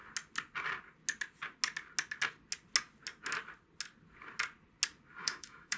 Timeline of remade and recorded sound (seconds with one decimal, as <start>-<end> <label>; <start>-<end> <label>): 0.0-5.2 recorded; 5.2-5.8 remade